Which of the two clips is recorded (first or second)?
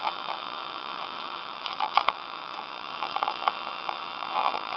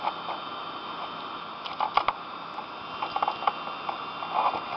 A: second